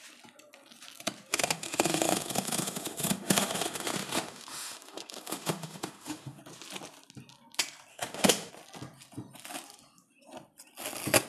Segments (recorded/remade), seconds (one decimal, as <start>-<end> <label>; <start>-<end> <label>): 0.0-1.3 recorded; 1.3-6.4 remade; 6.4-7.9 recorded; 7.9-8.5 remade; 8.5-11.3 recorded

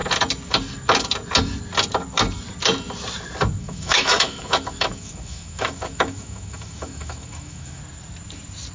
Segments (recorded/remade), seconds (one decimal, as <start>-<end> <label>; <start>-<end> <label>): 0.0-3.6 recorded; 3.6-7.8 remade; 7.8-8.7 recorded

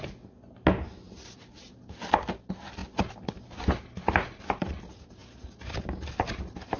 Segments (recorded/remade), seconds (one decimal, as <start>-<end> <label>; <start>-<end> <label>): 0.0-6.8 recorded

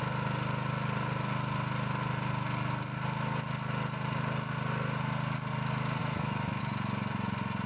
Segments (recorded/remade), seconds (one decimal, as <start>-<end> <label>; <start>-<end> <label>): 0.0-6.0 recorded; 6.0-6.6 remade; 6.6-7.7 recorded

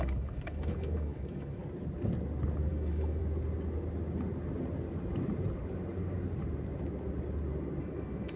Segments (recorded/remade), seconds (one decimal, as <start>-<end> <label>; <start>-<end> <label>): 0.0-1.6 remade; 1.6-2.7 recorded; 2.7-3.2 remade; 3.2-7.8 recorded; 7.8-8.4 remade